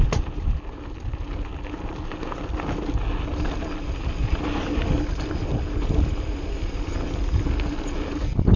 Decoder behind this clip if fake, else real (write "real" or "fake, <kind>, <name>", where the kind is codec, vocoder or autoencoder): real